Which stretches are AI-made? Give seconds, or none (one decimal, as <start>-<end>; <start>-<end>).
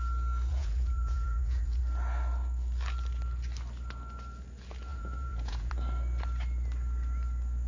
0.5-1.8; 4.9-5.7